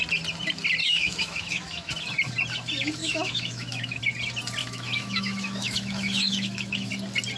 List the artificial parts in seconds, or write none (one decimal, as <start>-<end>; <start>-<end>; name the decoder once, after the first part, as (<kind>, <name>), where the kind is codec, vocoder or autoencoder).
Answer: 0.8-1.9 (autoencoder, DAC-VAE); 3.0-4.0; 4.6-6.9